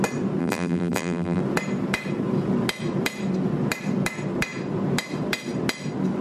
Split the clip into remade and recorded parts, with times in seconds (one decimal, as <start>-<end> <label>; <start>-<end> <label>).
0.0-0.4 recorded; 0.4-1.4 remade; 1.4-6.2 recorded